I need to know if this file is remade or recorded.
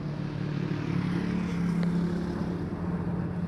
recorded